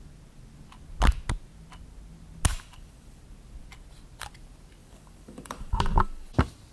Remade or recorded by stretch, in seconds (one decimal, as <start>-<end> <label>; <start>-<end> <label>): 0.0-2.5 recorded; 2.5-3.2 remade; 3.2-4.8 recorded; 4.8-6.3 remade; 6.3-6.7 recorded